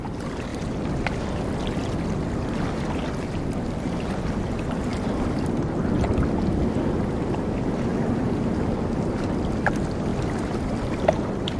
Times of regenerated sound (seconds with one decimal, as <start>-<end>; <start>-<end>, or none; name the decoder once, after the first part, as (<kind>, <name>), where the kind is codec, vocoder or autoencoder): 7.9-8.8 (vocoder, BigVGAN v2); 10.1-11.1